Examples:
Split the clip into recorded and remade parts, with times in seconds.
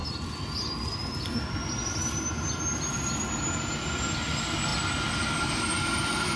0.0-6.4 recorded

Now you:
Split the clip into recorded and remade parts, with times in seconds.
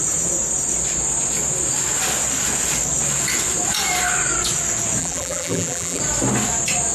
0.0-5.0 recorded; 5.0-6.0 remade; 6.0-6.9 recorded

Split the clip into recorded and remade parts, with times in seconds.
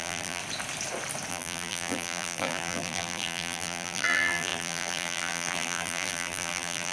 0.0-0.4 remade; 0.4-1.3 recorded; 1.3-6.9 remade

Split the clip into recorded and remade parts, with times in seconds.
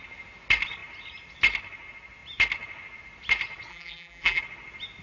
0.0-3.7 recorded; 3.7-4.4 remade; 4.4-5.0 recorded